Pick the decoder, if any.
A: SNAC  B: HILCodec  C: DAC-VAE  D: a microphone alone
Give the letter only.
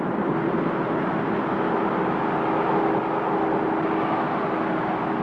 D